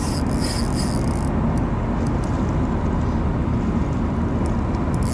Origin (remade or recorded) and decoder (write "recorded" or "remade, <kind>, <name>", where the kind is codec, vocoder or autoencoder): recorded